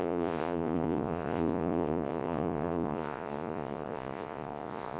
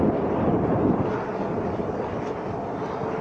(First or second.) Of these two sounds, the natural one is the second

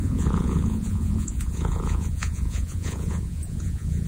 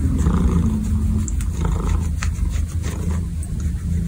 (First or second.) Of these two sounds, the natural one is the second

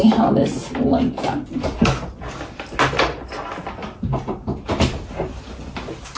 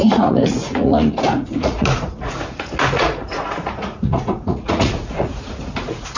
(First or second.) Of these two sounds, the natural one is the first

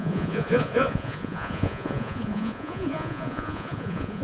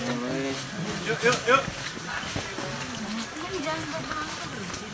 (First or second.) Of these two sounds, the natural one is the second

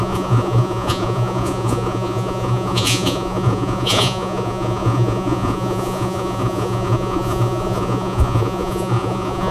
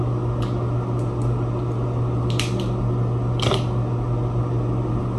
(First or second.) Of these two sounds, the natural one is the second